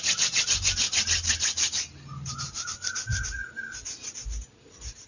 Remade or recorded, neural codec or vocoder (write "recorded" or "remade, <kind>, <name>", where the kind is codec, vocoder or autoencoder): recorded